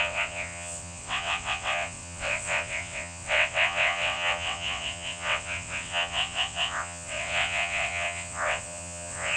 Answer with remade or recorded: remade